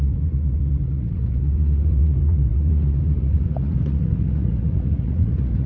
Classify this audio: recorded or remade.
remade